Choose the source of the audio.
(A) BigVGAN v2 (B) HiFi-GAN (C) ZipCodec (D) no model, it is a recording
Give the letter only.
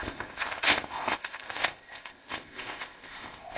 C